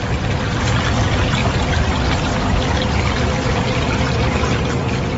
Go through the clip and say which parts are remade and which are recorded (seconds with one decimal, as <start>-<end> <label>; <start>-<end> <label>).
0.0-1.4 recorded; 1.4-3.9 remade; 3.9-5.2 recorded